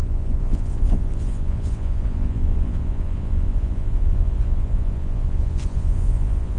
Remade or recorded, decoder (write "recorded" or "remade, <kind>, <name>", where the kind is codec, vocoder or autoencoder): remade, vocoder, Vocos